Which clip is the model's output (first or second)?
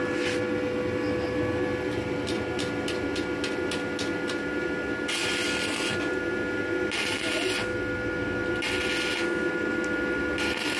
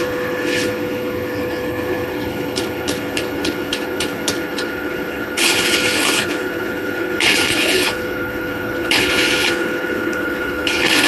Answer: second